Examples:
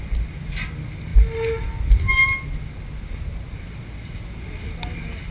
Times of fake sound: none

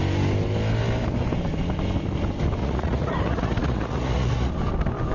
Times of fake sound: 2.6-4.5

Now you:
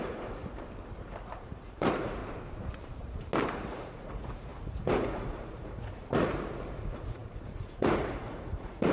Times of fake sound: 0.0-0.4; 1.4-2.2; 3.5-8.9

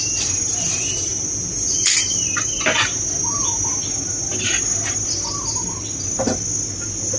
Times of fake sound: none

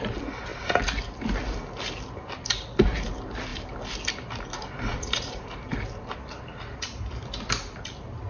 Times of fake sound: 4.9-5.4

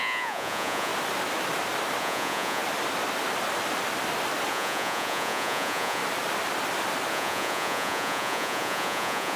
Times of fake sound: 0.0-0.9; 2.0-2.6; 4.5-6.0; 7.1-9.4

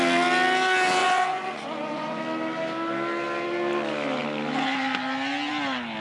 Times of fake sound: 1.0-2.2